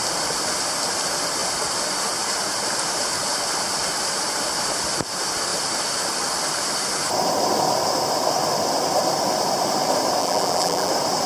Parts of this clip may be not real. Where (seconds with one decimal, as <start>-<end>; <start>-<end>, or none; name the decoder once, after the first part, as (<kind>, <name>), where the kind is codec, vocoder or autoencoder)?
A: 10.2-10.9 (vocoder, BigVGAN v2)